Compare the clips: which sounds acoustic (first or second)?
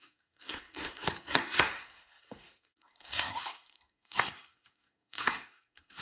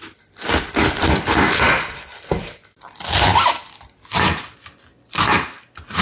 second